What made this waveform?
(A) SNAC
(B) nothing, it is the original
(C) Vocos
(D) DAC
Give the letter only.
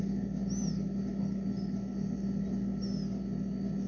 B